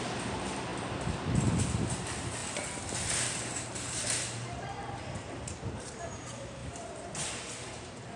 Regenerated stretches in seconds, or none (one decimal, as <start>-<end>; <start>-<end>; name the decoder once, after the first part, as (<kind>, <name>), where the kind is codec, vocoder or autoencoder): 0.0-0.7 (vocoder, BigVGAN v2); 1.9-8.2